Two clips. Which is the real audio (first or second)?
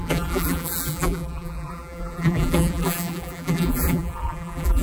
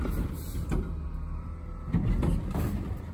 second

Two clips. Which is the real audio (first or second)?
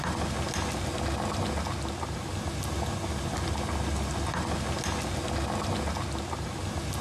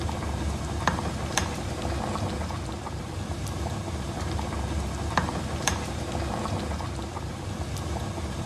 first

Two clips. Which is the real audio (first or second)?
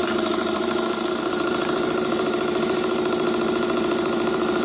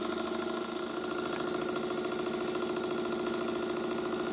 second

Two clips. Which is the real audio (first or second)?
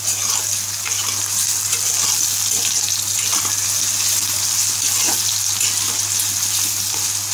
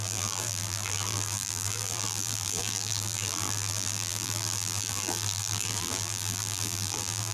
first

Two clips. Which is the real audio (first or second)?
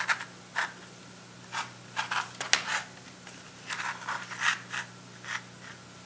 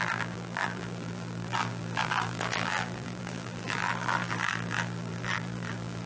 first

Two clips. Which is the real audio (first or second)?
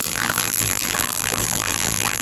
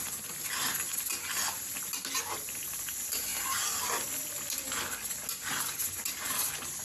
second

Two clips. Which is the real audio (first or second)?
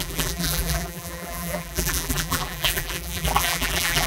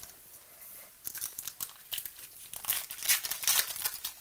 second